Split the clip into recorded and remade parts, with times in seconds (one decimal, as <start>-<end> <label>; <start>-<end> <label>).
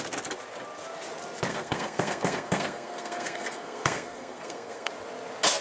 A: 0.0-1.5 recorded; 1.5-4.9 remade; 4.9-5.6 recorded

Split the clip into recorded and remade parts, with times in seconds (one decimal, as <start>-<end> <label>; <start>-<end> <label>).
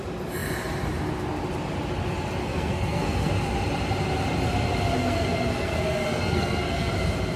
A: 0.0-2.4 recorded; 2.4-3.3 remade; 3.3-5.0 recorded; 5.0-6.9 remade; 6.9-7.4 recorded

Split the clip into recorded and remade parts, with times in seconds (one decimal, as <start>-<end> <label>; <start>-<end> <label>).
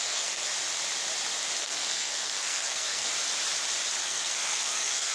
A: 0.0-0.5 remade; 0.5-1.6 recorded; 1.6-3.1 remade; 3.1-4.0 recorded; 4.0-5.1 remade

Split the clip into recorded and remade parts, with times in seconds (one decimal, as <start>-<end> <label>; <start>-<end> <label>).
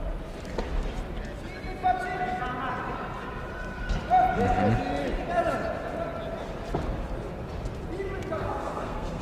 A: 0.0-8.4 recorded; 8.4-9.2 remade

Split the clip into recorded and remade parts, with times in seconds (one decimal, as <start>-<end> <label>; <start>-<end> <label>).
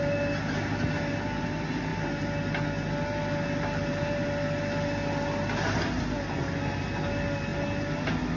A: 0.0-8.4 recorded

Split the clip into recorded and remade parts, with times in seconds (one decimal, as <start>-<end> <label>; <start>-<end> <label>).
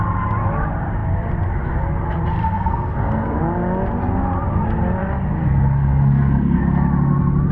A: 0.0-2.4 recorded; 2.4-3.4 remade; 3.4-5.4 recorded; 5.4-6.6 remade; 6.6-7.5 recorded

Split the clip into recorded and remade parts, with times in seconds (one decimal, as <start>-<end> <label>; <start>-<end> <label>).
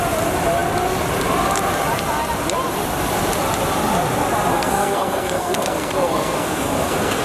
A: 0.0-4.5 recorded; 4.5-7.2 remade